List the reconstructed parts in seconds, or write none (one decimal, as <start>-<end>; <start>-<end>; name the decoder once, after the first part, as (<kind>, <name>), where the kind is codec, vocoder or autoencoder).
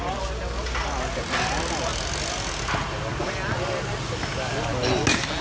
none